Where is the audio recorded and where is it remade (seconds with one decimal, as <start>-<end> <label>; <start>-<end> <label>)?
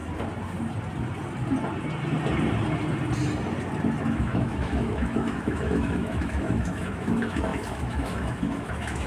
0.0-4.0 recorded; 4.0-9.1 remade